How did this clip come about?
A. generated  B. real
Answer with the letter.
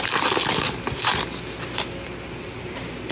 B